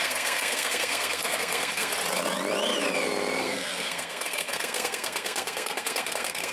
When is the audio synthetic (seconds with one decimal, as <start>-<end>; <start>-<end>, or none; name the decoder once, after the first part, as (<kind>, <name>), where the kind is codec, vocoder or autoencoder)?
0.0-1.9 (codec, SNAC); 3.4-6.5